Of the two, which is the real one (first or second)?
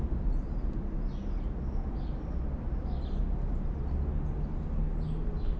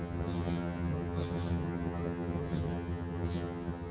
first